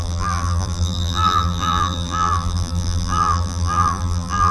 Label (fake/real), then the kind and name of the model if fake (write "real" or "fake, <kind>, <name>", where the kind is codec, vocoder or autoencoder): fake, vocoder, BigVGAN v2